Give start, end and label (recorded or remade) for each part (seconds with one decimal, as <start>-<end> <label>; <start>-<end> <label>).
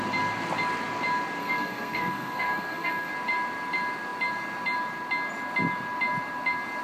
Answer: 0.0-1.4 recorded; 1.4-3.1 remade; 3.1-6.8 recorded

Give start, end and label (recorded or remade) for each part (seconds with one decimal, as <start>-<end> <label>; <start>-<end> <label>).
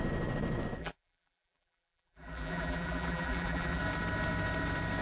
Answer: 0.0-0.8 recorded; 0.8-3.8 remade; 3.8-5.0 recorded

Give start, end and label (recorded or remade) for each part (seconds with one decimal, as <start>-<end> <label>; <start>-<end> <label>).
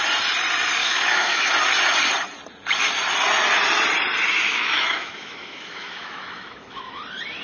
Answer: 0.0-0.8 recorded; 0.8-1.5 remade; 1.5-4.5 recorded; 4.5-7.0 remade; 7.0-7.4 recorded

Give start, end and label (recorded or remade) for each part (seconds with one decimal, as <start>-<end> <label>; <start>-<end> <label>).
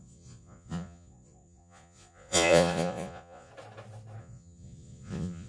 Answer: 0.0-3.5 remade; 3.5-4.2 recorded; 4.2-5.5 remade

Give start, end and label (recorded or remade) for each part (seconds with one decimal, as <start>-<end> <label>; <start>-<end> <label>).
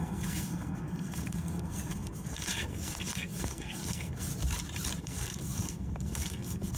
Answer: 0.0-4.3 remade; 4.3-5.0 recorded; 5.0-6.8 remade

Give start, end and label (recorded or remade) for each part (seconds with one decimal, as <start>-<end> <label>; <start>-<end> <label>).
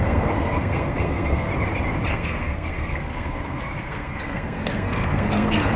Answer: 0.0-1.5 remade; 1.5-2.1 recorded; 2.1-5.8 remade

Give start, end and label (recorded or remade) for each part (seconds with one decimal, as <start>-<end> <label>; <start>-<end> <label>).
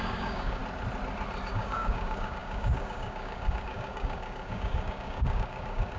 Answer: 0.0-0.6 remade; 0.6-1.5 recorded; 1.5-6.0 remade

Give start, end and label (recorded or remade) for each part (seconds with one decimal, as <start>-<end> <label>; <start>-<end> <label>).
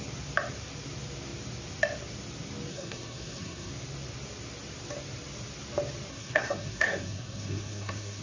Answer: 0.0-2.7 recorded; 2.7-3.7 remade; 3.7-6.1 recorded; 6.1-8.2 remade